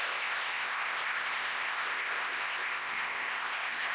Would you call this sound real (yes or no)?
no